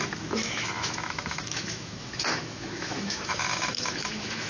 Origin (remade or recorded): remade